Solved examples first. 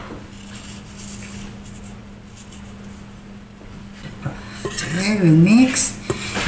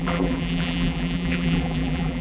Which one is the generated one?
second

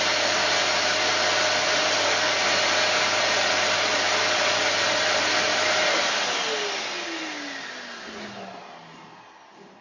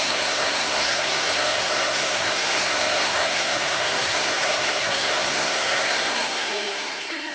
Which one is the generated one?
second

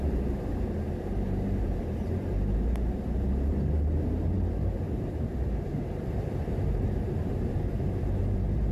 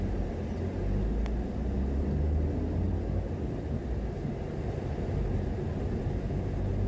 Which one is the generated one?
first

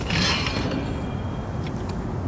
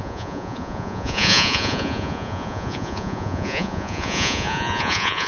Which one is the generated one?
second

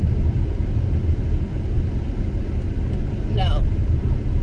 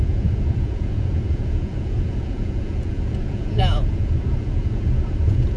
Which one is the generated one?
second